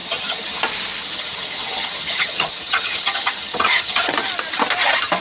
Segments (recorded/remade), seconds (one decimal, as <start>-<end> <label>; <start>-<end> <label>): 0.0-0.6 remade; 0.6-1.0 recorded; 1.0-4.1 remade; 4.1-5.2 recorded